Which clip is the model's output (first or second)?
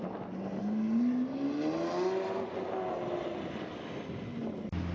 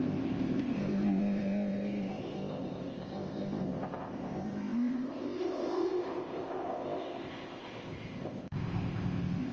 second